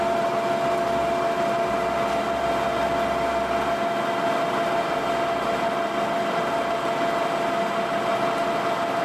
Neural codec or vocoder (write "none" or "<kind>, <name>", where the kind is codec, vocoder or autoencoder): none